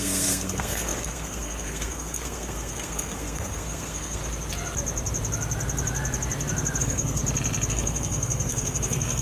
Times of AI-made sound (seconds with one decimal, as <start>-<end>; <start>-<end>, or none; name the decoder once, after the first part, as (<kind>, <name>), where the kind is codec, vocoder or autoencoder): 0.0-4.2 (codec, SNAC); 6.8-7.2; 7.7-9.2